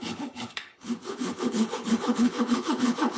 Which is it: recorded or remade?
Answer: remade